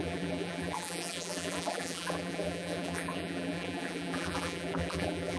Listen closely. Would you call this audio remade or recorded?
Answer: remade